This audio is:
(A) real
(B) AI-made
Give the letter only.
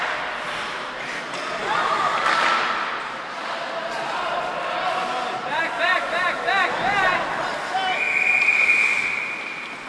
A